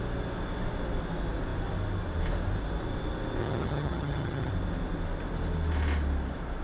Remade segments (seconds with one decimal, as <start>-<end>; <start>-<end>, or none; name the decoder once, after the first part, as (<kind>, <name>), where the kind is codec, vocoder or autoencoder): 3.4-4.5 (vocoder, HiFi-GAN)